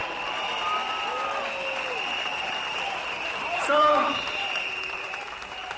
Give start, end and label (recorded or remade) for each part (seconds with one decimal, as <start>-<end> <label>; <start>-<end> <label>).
0.0-3.5 recorded; 3.5-5.8 remade